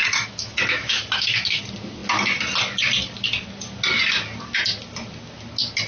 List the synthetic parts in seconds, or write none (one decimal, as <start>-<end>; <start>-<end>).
0.0-1.6